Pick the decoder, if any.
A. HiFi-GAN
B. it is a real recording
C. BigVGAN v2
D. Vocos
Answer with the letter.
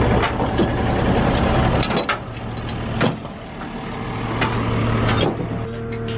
B